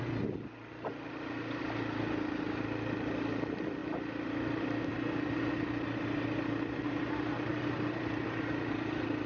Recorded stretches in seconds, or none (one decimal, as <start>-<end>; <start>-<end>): 0.0-7.5; 8.2-9.3